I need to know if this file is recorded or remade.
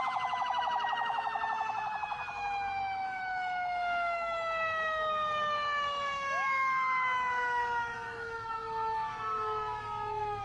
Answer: remade